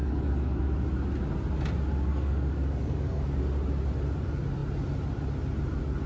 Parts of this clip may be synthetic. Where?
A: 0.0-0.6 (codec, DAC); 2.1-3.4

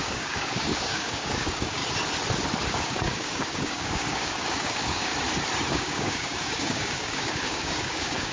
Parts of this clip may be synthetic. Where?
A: 0.0-1.8 (codec, DAC); 2.7-5.1; 5.7-8.3

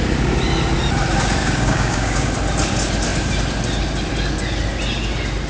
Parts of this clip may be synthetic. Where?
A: 1.4-2.3 (codec, DAC)